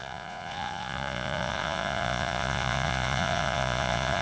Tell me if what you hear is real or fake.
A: fake